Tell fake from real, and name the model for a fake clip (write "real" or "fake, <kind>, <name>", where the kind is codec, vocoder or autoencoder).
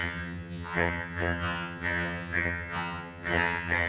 fake, vocoder, HiFi-GAN